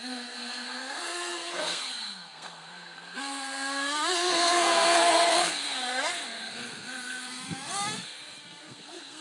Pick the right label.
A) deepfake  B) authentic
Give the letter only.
A